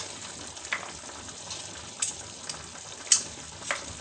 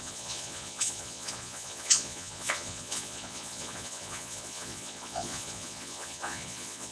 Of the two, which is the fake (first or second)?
second